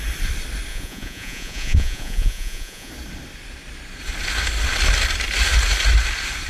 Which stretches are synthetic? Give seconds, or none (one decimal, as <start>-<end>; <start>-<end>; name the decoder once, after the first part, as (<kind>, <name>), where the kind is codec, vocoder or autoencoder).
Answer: 0.7-2.9 (vocoder, Vocos)